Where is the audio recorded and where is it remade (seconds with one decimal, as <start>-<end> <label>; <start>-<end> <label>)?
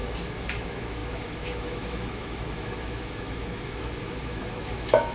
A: 0.0-0.5 recorded; 0.5-5.1 remade